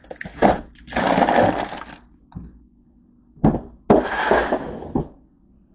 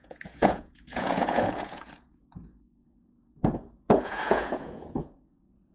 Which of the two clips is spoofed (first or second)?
second